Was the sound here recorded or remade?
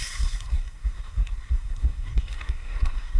remade